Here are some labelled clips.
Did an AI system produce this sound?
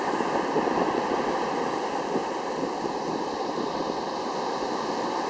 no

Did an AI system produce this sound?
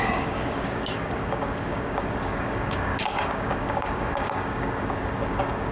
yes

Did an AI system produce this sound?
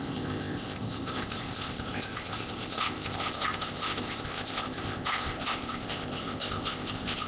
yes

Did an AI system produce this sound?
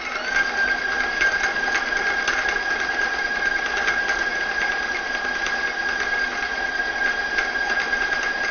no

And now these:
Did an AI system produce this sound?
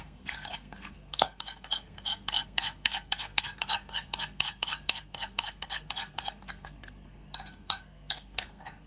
yes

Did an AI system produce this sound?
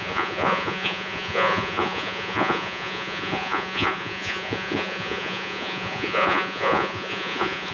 yes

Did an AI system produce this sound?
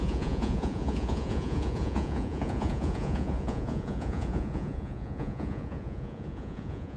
yes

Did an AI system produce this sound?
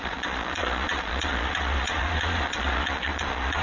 yes